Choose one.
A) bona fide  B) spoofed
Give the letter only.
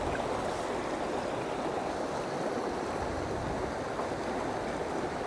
A